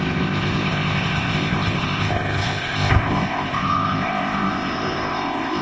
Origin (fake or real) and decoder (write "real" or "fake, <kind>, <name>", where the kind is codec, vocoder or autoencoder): fake, codec, ZipCodec